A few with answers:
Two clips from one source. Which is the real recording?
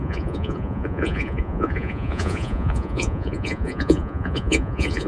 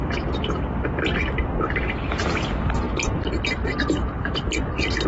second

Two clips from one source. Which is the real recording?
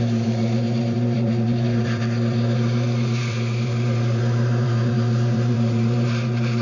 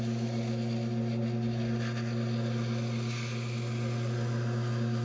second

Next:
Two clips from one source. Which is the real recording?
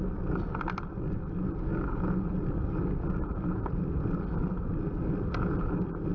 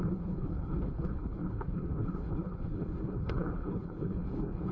first